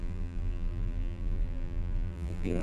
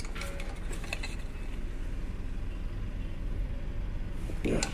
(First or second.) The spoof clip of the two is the first